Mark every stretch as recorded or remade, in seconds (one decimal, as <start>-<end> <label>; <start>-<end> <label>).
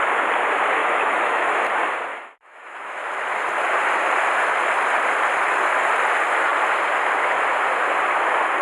0.0-0.8 recorded; 0.8-1.5 remade; 1.5-2.1 recorded; 2.1-3.1 remade; 3.1-8.6 recorded